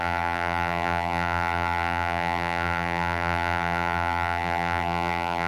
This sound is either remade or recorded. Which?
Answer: remade